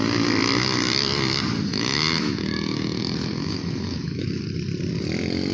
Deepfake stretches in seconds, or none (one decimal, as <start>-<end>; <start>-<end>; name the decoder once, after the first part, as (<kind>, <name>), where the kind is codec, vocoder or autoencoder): 1.7-4.4 (autoencoder, DAC-VAE)